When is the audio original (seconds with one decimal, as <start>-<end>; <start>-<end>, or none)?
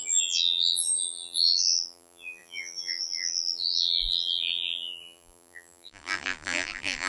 none